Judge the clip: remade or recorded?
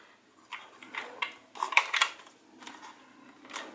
recorded